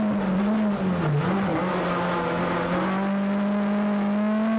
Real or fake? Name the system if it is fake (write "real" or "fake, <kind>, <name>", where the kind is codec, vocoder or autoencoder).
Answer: real